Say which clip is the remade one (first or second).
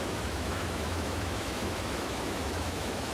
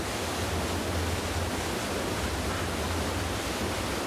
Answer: first